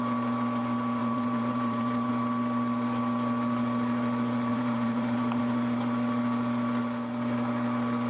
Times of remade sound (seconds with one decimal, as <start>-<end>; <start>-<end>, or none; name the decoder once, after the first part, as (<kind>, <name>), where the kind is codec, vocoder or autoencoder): 1.0-2.1 (vocoder, BigVGAN v2); 4.5-5.4